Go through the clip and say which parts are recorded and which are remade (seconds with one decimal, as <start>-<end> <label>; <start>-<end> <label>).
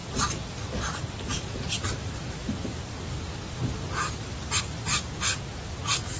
0.0-1.3 recorded; 1.3-5.3 remade; 5.3-6.2 recorded